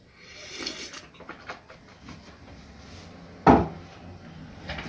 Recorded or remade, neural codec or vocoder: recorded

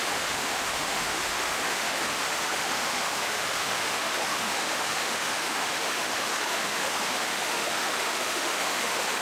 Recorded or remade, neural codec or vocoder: remade, autoencoder, DAC-VAE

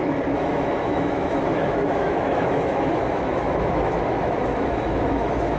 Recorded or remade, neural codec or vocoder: remade, autoencoder, DAC-VAE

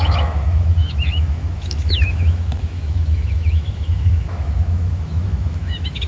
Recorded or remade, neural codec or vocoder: remade, autoencoder, DAC-VAE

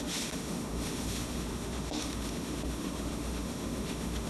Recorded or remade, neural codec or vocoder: remade, autoencoder, DAC-VAE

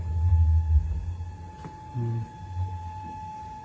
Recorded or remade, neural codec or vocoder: recorded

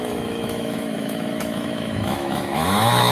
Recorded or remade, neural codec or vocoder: remade, autoencoder, DAC-VAE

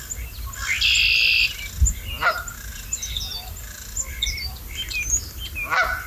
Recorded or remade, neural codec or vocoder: recorded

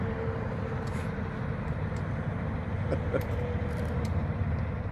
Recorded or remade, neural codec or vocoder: recorded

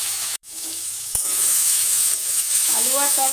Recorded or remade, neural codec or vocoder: remade, autoencoder, DAC-VAE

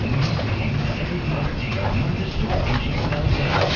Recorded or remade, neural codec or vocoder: recorded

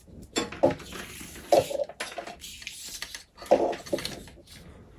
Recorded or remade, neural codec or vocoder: recorded